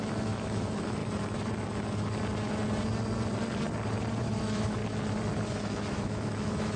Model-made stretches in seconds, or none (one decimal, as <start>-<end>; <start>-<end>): 0.0-1.0; 4.2-4.8; 5.5-6.8